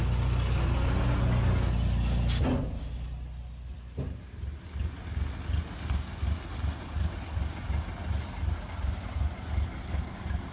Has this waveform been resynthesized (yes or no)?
no